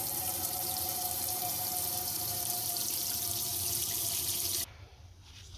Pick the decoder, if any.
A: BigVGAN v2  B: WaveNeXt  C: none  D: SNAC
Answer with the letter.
A